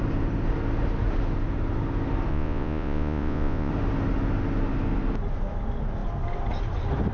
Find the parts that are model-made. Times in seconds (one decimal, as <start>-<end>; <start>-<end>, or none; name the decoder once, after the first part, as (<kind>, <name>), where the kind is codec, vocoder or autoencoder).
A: 2.3-3.7 (vocoder, Vocos)